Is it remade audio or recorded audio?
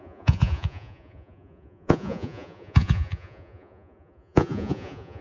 remade